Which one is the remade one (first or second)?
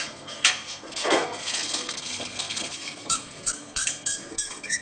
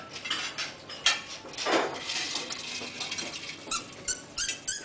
first